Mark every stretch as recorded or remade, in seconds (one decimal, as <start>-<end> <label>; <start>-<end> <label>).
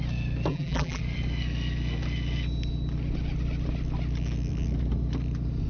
0.0-0.5 recorded; 0.5-1.0 remade; 1.0-5.7 recorded